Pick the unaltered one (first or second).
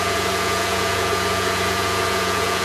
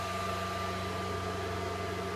second